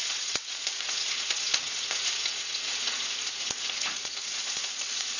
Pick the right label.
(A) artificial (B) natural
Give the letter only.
A